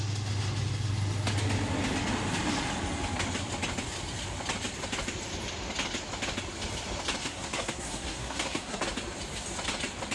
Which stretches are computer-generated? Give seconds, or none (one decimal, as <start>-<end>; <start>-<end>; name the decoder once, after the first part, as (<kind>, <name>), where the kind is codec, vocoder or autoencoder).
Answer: 7.2-8.8 (codec, SNAC)